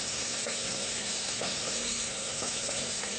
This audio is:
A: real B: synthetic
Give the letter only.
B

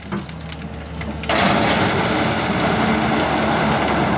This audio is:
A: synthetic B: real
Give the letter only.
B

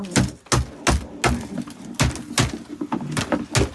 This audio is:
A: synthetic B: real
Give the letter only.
B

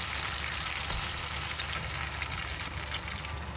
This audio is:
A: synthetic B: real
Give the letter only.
B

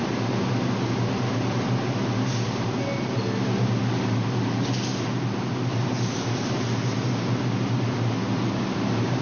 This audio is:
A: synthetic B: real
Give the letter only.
B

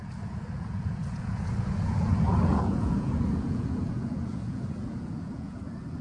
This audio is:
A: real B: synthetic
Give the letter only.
B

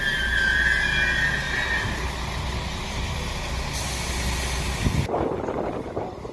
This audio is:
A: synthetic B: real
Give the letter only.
B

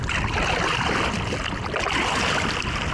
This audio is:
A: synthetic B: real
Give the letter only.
B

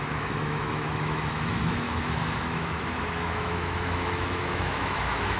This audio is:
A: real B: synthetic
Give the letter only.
B